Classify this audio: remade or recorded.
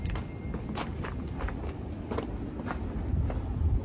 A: recorded